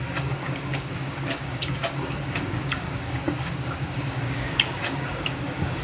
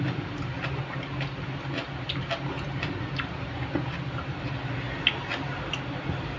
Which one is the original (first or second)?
second